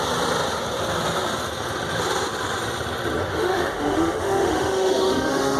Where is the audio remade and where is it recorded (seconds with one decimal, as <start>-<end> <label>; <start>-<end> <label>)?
0.0-3.3 recorded; 3.3-5.6 remade